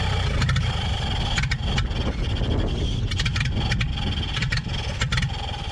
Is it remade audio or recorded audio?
recorded